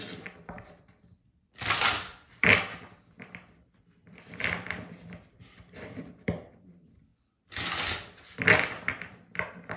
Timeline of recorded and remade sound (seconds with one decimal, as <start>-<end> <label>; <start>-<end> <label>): 0.0-7.1 remade; 7.1-9.8 recorded